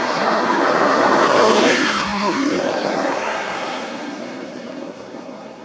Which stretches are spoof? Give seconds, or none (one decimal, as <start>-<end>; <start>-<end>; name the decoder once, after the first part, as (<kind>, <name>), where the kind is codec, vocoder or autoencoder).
0.0-5.6 (codec, SNAC)